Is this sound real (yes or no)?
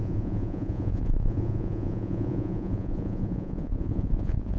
no